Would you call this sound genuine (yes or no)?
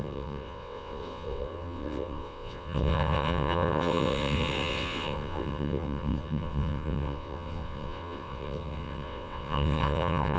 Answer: no